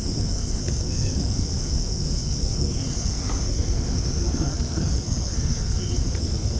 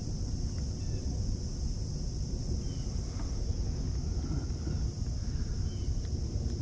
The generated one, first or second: first